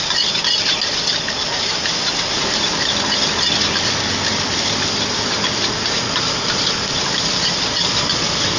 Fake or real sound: real